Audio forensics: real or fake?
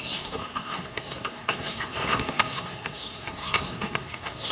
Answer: fake